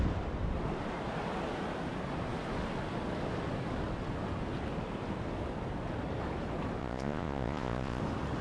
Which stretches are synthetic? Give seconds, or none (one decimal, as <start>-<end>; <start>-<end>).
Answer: 6.8-8.0